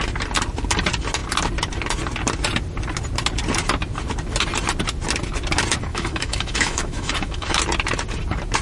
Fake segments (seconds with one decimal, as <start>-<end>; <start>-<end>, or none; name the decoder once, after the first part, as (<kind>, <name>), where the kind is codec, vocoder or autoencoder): 5.9-7.6 (autoencoder, DAC-VAE)